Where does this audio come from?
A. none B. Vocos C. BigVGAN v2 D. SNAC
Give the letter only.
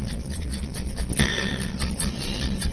B